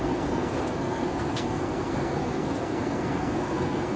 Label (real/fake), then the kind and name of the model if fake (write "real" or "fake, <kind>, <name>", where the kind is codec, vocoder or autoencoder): fake, codec, SNAC